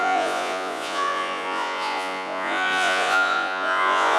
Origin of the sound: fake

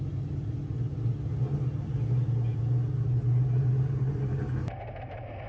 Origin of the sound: real